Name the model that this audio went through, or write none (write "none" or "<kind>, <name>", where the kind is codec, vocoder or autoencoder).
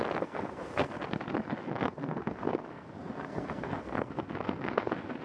codec, SNAC